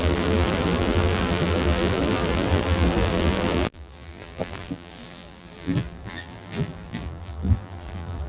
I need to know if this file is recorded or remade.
remade